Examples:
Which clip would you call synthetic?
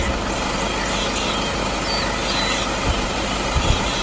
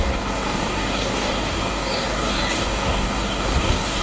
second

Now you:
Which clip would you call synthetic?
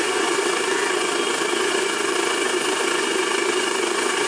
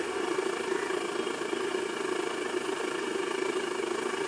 first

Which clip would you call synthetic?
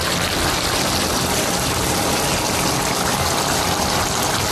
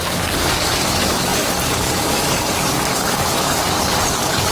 second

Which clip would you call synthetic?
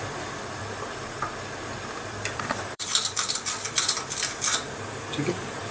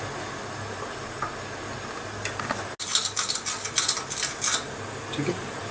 first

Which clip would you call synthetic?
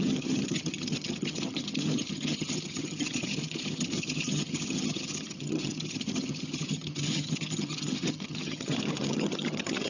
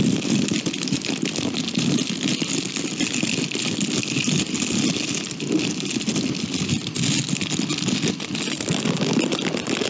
first